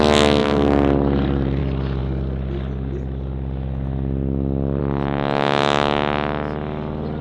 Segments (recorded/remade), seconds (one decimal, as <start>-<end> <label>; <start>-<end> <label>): 0.0-0.4 recorded; 0.4-1.6 remade; 1.6-7.2 recorded